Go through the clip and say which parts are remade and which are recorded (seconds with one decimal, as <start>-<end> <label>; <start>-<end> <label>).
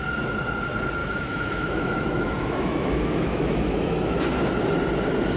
0.0-1.0 recorded; 1.0-4.2 remade; 4.2-5.4 recorded